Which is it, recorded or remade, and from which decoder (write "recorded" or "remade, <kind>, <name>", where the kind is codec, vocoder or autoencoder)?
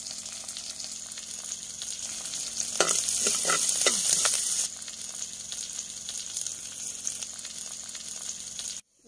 recorded